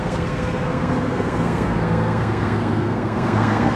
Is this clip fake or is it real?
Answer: fake